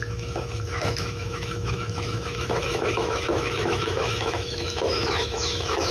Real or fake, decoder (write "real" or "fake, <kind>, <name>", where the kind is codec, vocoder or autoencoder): fake, autoencoder, DAC-VAE